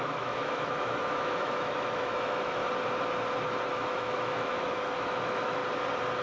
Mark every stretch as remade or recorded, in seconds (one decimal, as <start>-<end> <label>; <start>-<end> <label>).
0.0-2.6 remade; 2.6-3.7 recorded; 3.7-5.6 remade; 5.6-6.2 recorded